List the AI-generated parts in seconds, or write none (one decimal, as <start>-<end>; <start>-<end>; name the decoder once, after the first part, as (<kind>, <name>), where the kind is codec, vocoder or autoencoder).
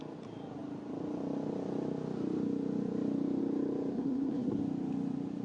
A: 3.9-4.6 (codec, SNAC)